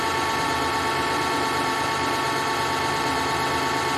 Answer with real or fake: real